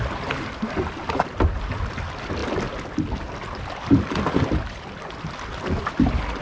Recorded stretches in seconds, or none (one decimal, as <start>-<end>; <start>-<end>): 0.0-6.4